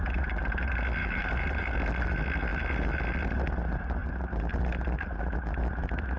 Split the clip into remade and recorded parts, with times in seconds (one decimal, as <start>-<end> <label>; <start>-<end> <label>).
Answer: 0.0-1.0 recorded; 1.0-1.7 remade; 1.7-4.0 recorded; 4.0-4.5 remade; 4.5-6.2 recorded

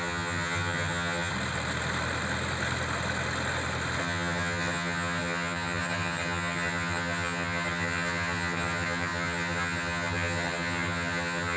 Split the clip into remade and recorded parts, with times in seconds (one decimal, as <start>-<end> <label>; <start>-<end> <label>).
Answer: 0.0-1.3 remade; 1.3-4.0 recorded; 4.0-11.6 remade

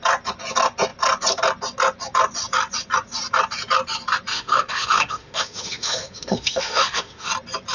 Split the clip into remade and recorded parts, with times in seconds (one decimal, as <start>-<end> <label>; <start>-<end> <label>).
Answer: 0.0-4.3 recorded; 4.3-7.3 remade; 7.3-7.7 recorded

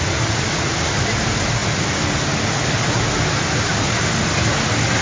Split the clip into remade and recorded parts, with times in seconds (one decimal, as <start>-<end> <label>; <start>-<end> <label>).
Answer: 0.0-5.0 recorded